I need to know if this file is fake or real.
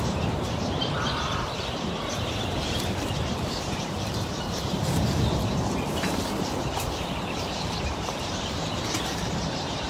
fake